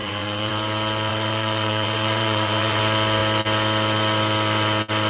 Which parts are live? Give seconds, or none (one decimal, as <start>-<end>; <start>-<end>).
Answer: 0.5-1.1; 2.8-5.1